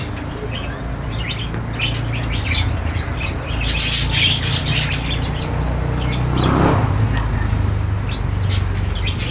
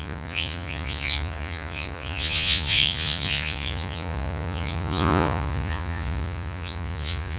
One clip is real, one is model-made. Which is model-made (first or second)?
second